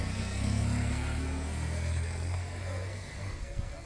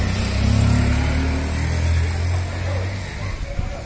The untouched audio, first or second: second